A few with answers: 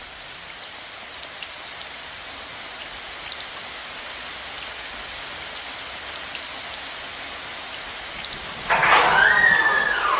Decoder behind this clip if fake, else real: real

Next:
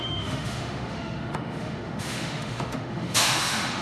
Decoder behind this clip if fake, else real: fake, autoencoder, DAC-VAE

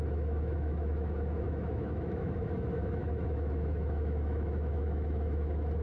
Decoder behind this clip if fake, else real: fake, autoencoder, DAC-VAE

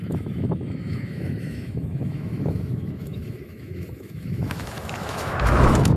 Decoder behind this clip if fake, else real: fake, autoencoder, DAC-VAE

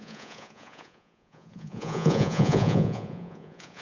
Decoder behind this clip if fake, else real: fake, vocoder, Vocos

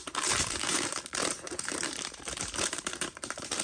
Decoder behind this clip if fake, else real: fake, vocoder, BigVGAN v2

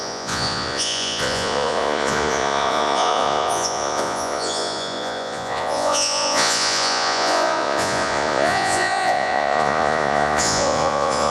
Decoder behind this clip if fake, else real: fake, vocoder, Vocos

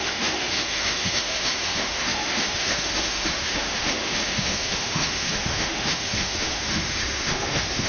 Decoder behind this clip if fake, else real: fake, autoencoder, DAC-VAE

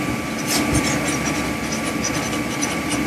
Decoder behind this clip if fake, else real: real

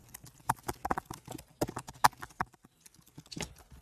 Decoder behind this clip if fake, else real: real